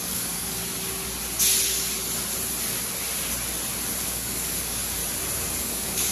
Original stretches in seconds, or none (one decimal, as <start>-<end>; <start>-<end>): 0.6-4.0; 5.0-5.6